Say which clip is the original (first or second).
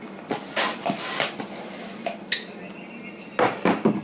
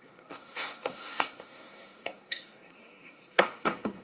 first